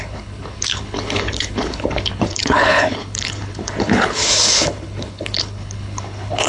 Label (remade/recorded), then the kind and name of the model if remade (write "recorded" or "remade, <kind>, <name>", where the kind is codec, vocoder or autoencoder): remade, codec, HILCodec